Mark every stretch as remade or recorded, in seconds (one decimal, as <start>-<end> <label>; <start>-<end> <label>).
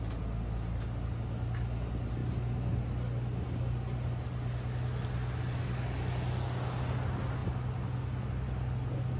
0.0-9.2 recorded